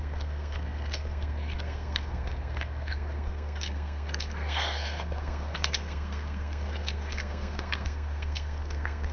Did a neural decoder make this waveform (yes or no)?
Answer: yes